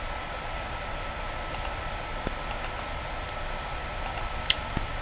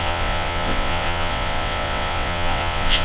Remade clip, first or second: second